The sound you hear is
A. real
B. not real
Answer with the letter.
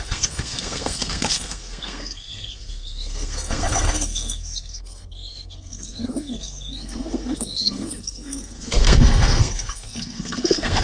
B